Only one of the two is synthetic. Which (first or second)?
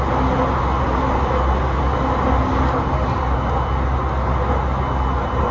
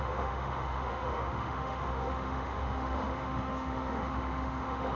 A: second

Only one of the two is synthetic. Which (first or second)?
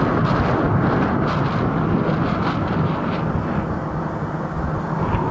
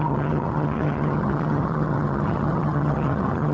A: second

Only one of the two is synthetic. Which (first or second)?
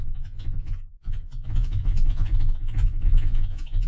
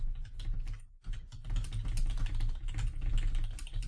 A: first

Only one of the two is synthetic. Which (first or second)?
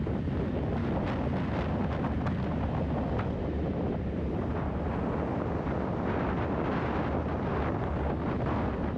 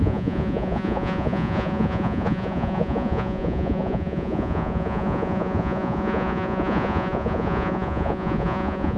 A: second